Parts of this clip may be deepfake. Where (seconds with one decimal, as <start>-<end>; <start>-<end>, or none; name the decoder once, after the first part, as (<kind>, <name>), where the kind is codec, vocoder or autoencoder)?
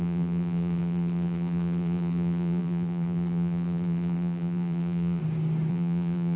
0.0-5.2 (vocoder, BigVGAN v2); 5.7-6.4